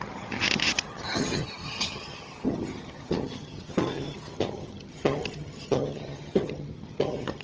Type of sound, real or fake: fake